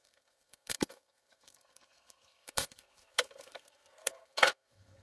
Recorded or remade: remade